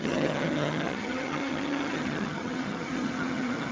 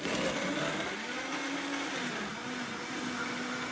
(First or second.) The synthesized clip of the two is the first